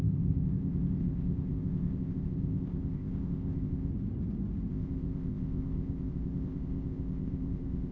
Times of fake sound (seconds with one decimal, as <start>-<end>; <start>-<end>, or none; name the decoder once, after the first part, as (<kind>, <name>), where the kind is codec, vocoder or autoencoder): 0.0-3.9 (codec, ZipCodec); 4.7-7.9